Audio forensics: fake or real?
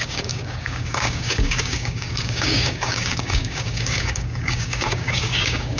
fake